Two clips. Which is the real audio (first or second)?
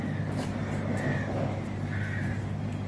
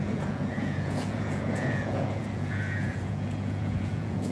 first